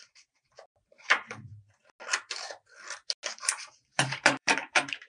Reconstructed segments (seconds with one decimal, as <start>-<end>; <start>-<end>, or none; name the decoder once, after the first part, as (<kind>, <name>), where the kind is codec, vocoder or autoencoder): 0.0-1.5 (vocoder, BigVGAN v2); 3.4-5.1